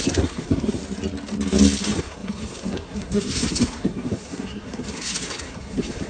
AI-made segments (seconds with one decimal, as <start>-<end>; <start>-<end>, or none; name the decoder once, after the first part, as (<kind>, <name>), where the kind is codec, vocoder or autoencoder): 0.0-0.8 (codec, SNAC); 1.8-6.1